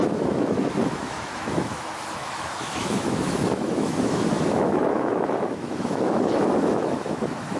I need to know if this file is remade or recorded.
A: remade